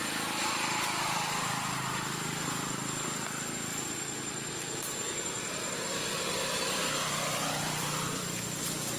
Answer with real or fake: fake